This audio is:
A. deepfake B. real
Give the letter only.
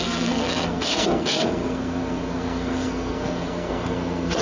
A